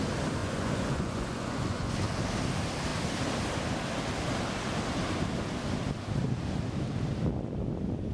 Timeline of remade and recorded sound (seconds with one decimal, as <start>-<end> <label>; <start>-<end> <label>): 0.0-0.4 recorded; 0.4-1.9 remade; 1.9-8.1 recorded